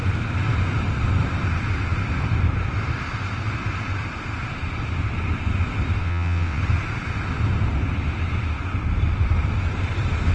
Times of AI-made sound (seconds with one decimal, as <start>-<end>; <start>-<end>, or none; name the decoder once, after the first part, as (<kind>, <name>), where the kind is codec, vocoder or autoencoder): 6.0-6.6 (vocoder, WaveNeXt)